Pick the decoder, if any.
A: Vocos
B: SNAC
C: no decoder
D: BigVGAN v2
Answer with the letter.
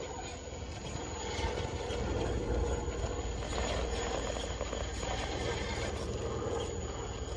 C